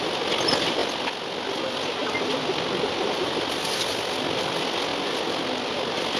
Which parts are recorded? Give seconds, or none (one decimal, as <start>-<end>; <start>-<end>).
0.0-6.2